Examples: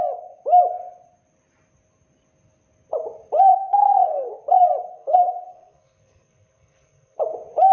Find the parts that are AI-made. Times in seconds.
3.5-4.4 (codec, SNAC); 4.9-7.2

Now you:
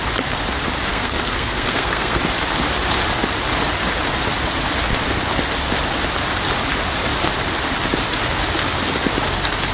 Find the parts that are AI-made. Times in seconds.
0.9-2.2 (codec, SNAC)

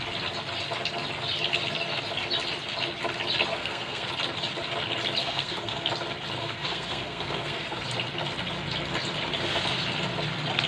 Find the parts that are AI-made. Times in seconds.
3.5-4.1 (codec, SNAC); 5.2-5.9; 6.4-7.8

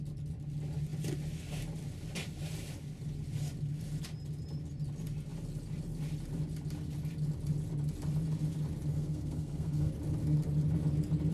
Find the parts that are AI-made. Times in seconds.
8.9-9.9 (codec, SNAC)